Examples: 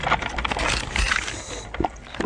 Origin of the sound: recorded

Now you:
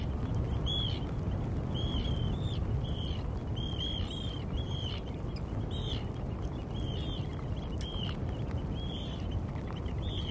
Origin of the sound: recorded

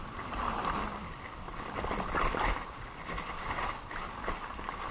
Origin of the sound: recorded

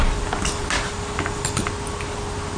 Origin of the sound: recorded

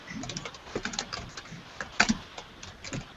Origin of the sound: recorded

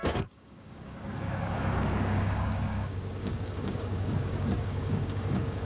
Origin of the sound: remade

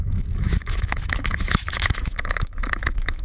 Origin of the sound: remade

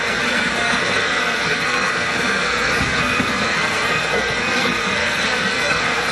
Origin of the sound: remade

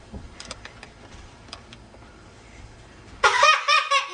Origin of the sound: remade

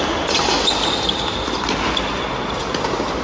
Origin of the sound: recorded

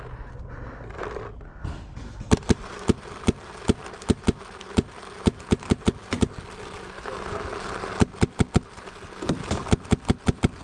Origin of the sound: recorded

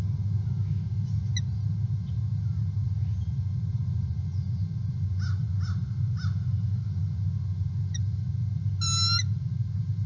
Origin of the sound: recorded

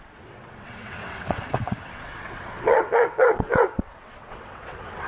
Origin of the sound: remade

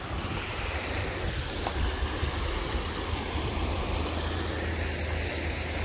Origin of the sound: recorded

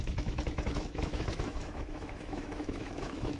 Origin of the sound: remade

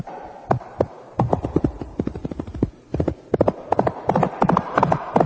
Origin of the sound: remade